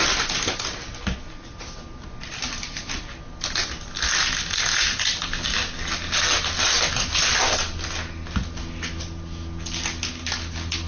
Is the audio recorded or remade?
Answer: recorded